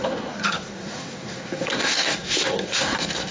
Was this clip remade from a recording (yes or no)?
yes